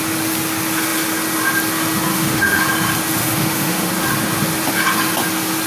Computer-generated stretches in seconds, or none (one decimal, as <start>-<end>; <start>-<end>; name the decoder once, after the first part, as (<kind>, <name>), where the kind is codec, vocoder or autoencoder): 2.1-2.6 (autoencoder, DAC-VAE); 3.2-3.9